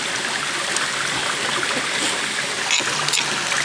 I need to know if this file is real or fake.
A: real